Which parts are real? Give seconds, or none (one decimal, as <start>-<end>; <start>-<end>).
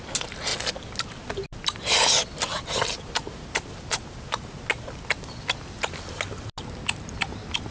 0.0-7.7